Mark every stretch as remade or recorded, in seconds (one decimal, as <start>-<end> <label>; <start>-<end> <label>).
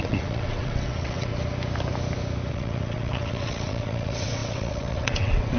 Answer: 0.0-1.3 remade; 1.3-2.5 recorded; 2.5-5.6 remade